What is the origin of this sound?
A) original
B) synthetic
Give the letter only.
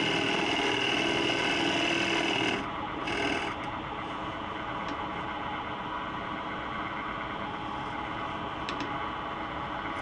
A